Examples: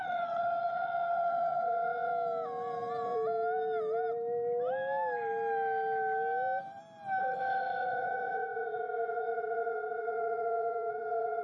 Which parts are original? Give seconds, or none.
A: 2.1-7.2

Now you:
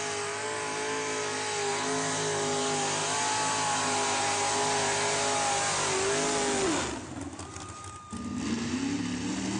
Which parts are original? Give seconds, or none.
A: 0.0-9.6

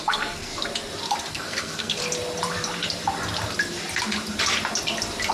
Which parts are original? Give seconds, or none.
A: 0.5-1.3; 2.0-5.3

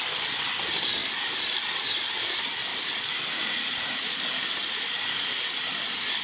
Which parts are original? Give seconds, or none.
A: 0.0-6.2

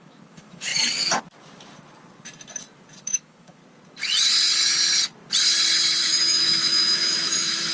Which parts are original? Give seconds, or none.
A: 0.7-3.0; 3.6-6.0

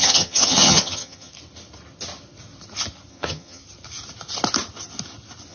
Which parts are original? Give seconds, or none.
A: 1.3-3.1; 3.6-5.5